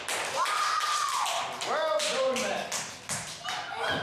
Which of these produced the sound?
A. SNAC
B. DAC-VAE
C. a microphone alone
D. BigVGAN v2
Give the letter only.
C